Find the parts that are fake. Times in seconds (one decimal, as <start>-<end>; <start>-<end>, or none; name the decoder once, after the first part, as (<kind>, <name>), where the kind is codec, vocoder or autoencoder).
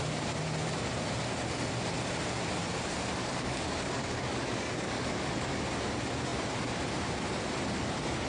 3.2-5.6 (codec, DAC)